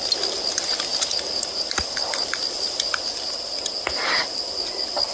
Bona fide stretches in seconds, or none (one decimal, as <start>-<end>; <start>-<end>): 0.0-5.1